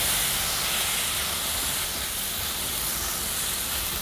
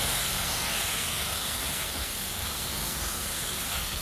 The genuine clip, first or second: first